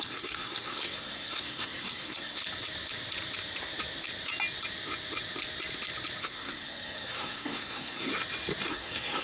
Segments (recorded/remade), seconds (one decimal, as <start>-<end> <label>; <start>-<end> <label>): 0.0-2.4 remade; 2.4-6.2 recorded; 6.2-8.1 remade; 8.1-8.7 recorded; 8.7-9.2 remade